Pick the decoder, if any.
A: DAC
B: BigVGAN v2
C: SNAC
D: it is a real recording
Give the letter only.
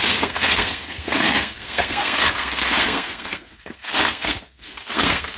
C